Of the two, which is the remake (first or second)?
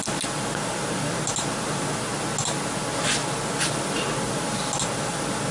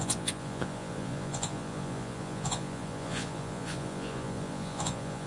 second